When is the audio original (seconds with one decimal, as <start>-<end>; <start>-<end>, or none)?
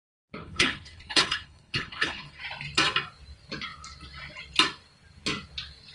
0.0-0.4; 2.4-5.9